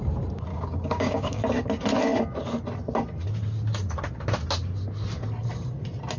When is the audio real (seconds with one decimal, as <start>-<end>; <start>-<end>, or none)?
0.0-0.5; 1.4-6.2